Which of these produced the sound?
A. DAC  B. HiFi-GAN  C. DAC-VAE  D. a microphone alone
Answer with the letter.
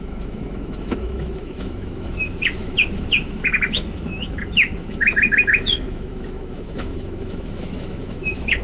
C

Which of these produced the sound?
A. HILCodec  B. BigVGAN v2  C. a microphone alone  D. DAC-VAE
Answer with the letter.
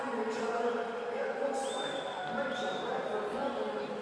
C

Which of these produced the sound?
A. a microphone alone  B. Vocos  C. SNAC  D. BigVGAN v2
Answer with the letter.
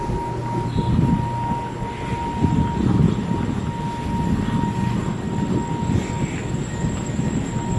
A